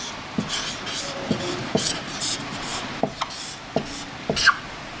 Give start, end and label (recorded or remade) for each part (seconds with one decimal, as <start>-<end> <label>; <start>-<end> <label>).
0.0-1.6 recorded; 1.6-2.2 remade; 2.2-5.0 recorded